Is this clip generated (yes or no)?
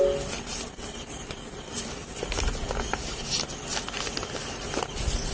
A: no